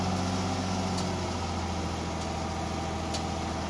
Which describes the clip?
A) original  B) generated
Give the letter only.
A